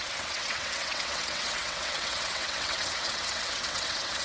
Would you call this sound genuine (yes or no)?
no